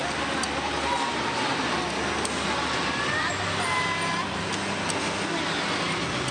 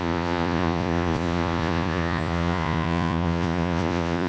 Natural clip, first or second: first